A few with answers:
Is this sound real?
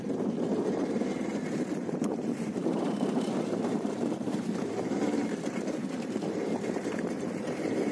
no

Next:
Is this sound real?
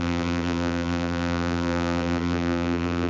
no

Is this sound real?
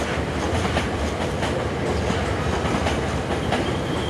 yes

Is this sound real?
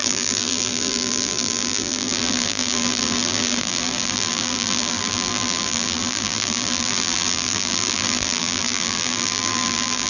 no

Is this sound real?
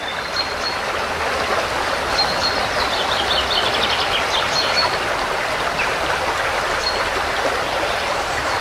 yes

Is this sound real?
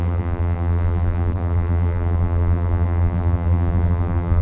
no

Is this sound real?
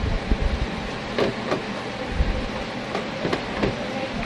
no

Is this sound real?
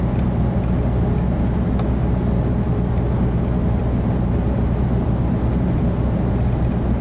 yes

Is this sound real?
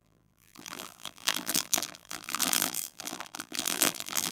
no